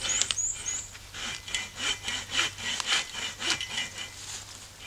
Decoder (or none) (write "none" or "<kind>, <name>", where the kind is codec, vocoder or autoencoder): none